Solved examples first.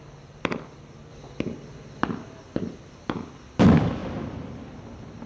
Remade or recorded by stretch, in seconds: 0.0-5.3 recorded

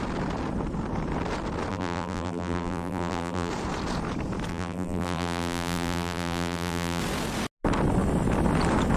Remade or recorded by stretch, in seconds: 0.0-1.7 recorded; 1.7-3.5 remade; 3.5-4.5 recorded; 4.5-7.0 remade; 7.0-9.0 recorded

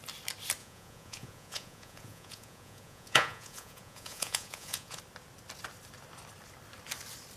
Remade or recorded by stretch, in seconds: 0.0-0.6 recorded; 0.6-5.0 remade; 5.0-7.4 recorded